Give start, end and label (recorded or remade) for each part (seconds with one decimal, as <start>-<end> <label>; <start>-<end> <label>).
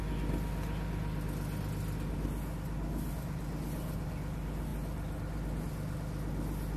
0.0-6.8 recorded